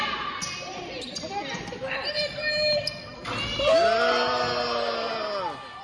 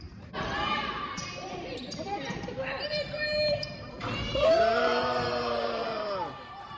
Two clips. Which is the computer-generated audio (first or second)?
second